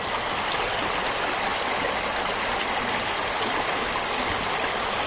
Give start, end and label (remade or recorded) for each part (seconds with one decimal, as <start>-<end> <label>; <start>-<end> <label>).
0.0-5.1 recorded